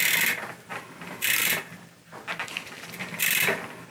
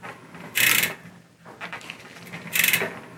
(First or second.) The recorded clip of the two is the second